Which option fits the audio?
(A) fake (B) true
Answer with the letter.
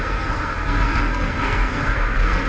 A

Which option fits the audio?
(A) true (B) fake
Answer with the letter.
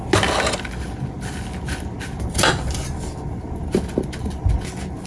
A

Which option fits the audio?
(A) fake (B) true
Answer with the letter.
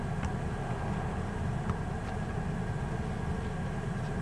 B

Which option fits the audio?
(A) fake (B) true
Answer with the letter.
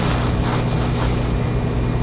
B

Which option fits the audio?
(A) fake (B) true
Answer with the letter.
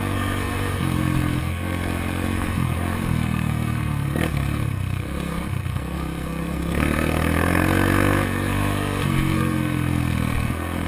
A